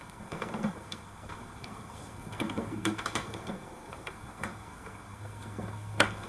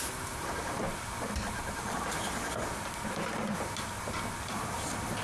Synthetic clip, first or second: first